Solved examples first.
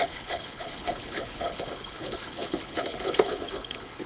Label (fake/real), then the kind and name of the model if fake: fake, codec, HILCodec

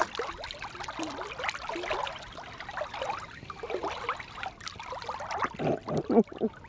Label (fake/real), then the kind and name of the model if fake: real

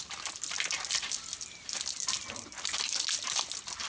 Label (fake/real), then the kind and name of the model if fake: real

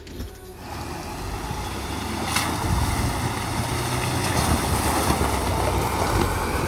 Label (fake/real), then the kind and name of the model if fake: real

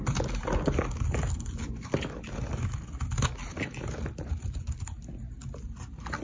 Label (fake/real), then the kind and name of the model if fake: real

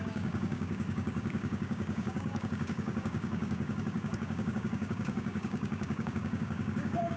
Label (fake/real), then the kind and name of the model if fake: fake, codec, DAC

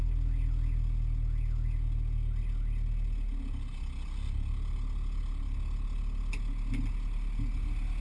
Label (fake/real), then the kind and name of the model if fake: real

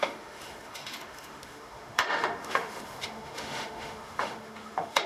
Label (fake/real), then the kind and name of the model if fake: fake, autoencoder, DAC-VAE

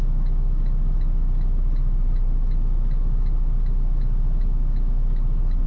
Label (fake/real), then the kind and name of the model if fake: real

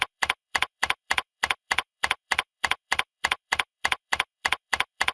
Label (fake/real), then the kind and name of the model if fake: fake, vocoder, BigVGAN v2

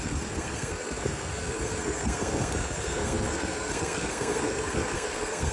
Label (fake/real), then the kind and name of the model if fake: fake, codec, SNAC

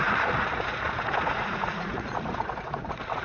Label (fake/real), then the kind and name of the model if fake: fake, vocoder, Vocos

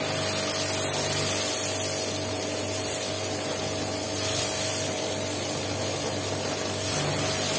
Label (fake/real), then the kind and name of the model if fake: real